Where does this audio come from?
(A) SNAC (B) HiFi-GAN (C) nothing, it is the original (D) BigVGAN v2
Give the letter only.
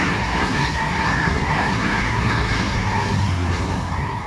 A